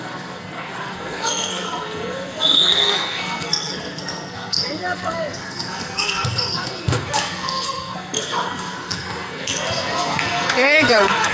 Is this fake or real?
fake